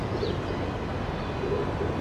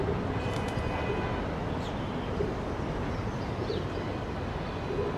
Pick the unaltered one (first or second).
first